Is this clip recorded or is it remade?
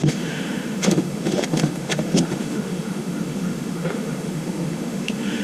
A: remade